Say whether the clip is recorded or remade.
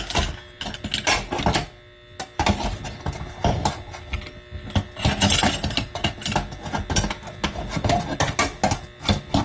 recorded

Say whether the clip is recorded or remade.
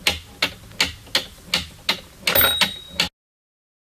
recorded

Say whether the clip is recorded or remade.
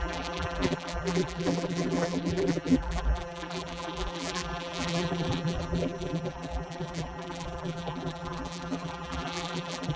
remade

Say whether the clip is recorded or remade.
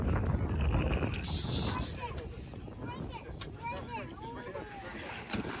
recorded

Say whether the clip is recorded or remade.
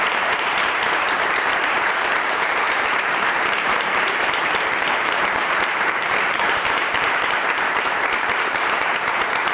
remade